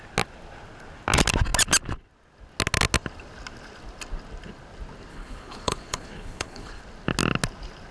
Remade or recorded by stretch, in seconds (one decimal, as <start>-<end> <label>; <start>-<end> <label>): 0.0-5.1 recorded; 5.1-6.8 remade; 6.8-7.9 recorded